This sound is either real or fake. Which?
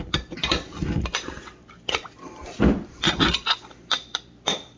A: real